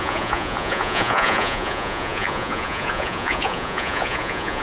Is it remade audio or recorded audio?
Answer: remade